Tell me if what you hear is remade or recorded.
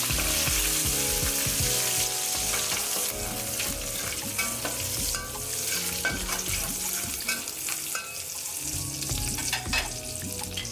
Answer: recorded